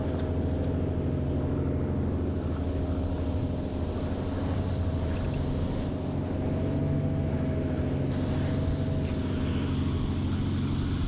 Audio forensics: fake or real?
real